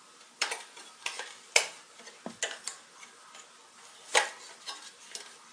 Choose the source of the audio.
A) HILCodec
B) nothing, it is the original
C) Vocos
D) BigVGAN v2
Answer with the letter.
B